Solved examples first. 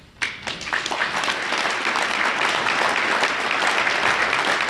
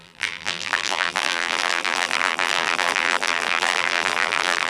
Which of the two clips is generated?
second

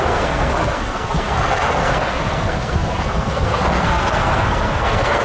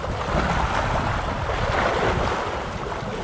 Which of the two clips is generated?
first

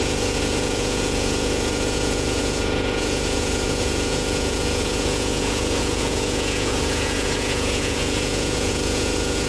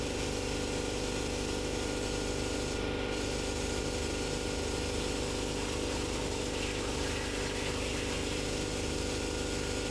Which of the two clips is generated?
first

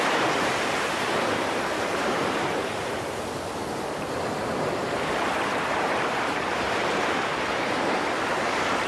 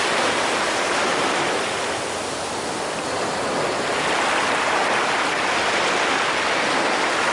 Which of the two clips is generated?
first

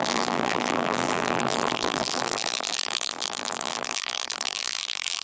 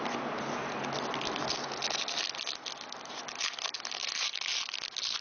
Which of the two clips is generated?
first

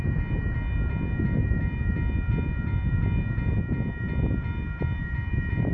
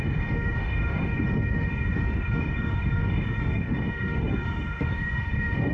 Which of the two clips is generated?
second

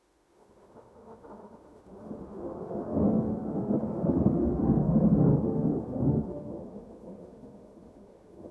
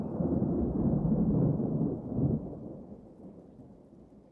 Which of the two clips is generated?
first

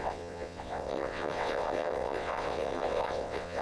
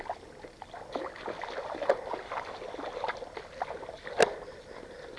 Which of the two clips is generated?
first